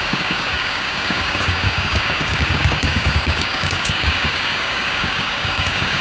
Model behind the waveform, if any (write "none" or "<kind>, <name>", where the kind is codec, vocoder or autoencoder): codec, DAC